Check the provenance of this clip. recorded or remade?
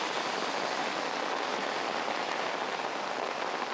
recorded